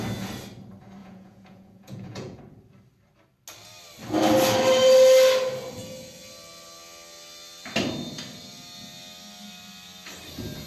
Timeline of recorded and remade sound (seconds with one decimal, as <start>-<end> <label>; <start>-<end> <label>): 0.0-1.0 recorded; 1.0-2.4 remade; 2.4-10.7 recorded